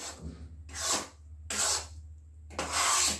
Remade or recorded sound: recorded